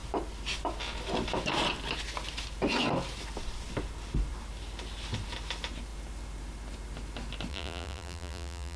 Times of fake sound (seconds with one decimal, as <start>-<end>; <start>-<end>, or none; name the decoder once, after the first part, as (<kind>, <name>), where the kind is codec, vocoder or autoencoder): 7.5-8.8 (vocoder, BigVGAN v2)

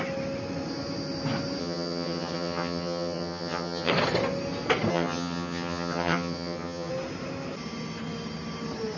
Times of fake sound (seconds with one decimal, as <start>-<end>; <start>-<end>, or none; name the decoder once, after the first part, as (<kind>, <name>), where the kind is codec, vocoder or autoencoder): 1.6-3.9 (vocoder, HiFi-GAN); 4.9-6.9

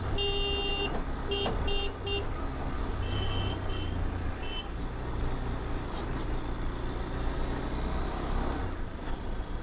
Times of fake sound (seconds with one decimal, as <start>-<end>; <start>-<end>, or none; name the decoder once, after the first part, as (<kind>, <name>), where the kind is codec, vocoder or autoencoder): none

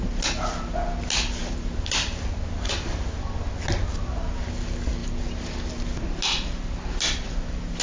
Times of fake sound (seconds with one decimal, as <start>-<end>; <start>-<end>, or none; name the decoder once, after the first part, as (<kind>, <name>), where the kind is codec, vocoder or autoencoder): none

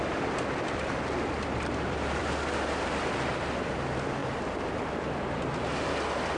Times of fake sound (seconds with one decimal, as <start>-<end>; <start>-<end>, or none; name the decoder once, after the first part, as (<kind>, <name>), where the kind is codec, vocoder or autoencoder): none

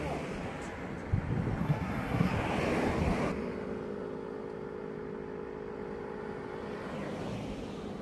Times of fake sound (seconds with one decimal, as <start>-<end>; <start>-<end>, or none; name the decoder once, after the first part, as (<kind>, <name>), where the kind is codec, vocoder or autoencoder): 1.6-2.3 (codec, SNAC)

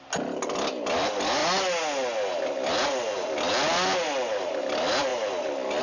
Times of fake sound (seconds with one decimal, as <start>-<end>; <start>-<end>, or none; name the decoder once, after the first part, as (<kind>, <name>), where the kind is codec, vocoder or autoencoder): none